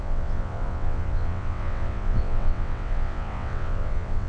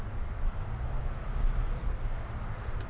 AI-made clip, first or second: first